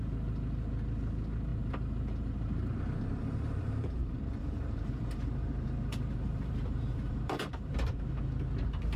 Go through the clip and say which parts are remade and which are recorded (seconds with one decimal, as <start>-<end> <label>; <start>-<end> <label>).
0.0-1.5 recorded; 1.5-2.7 remade; 2.7-3.2 recorded; 3.2-8.2 remade; 8.2-9.0 recorded